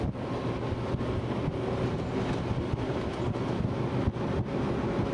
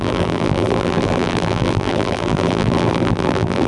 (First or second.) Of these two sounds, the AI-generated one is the second